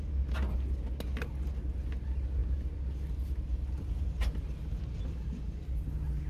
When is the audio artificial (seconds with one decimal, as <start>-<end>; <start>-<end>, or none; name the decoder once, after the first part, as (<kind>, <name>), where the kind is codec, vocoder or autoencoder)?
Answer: none